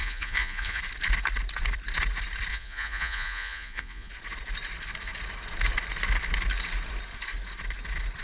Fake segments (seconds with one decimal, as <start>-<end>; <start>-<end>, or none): 0.0-0.8; 2.5-4.1